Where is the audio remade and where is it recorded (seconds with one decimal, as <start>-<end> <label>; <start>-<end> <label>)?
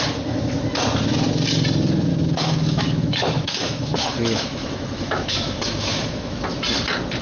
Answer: 0.0-2.1 recorded; 2.1-6.4 remade; 6.4-7.2 recorded